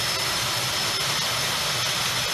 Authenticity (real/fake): real